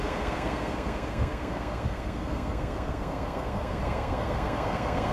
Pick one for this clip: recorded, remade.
remade